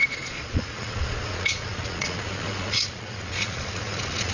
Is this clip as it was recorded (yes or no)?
no